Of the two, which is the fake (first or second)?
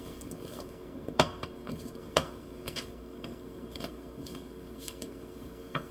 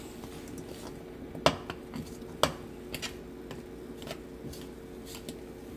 first